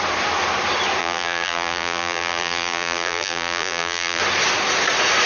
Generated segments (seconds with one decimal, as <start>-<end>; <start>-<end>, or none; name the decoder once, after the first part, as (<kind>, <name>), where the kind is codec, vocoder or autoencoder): 1.0-4.2 (vocoder, BigVGAN v2)